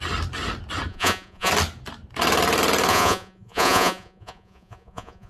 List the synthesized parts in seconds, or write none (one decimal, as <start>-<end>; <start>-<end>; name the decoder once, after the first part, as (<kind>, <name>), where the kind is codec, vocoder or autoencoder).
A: 0.9-1.5 (vocoder, Vocos); 2.9-5.3